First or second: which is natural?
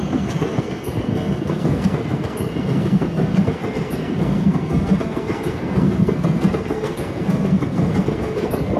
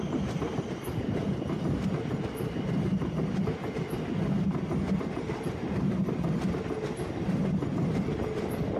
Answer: second